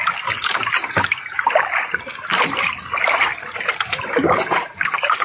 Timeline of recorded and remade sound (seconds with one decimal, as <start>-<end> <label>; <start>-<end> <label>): 0.0-5.2 recorded